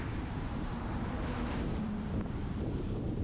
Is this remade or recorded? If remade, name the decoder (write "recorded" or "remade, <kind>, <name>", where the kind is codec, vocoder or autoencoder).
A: remade, vocoder, BigVGAN v2